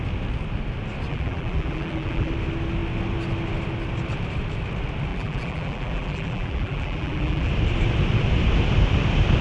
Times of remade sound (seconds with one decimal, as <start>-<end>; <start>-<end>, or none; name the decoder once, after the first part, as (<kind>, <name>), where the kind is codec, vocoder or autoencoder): 1.1-2.3 (vocoder, BigVGAN v2); 5.1-7.5

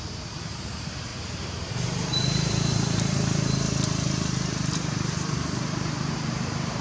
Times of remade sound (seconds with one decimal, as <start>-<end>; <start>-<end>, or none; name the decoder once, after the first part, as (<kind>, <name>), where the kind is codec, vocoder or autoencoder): 0.0-6.8 (vocoder, BigVGAN v2)

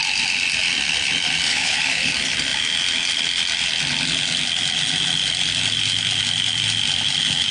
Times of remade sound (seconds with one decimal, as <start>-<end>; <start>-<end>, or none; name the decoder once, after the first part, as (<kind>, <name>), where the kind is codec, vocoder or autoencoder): 1.5-2.1 (codec, HILCodec)

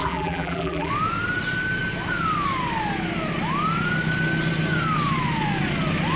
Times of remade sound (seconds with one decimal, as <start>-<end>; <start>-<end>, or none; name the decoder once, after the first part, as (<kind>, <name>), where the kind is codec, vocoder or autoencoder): 0.0-0.9 (vocoder, BigVGAN v2)

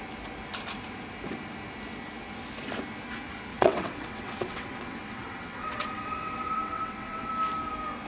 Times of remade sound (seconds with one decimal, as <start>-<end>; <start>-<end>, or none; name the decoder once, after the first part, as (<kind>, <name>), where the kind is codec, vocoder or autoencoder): 3.5-7.3 (vocoder, WaveNeXt)

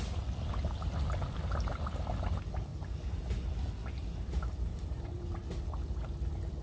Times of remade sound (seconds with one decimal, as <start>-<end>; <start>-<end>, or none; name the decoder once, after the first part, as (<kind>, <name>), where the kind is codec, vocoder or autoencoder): 2.7-3.5 (vocoder, BigVGAN v2); 4.0-5.4